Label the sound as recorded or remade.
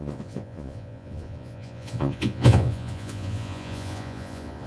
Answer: remade